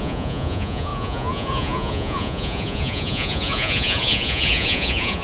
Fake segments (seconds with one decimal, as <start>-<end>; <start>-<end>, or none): 0.0-5.2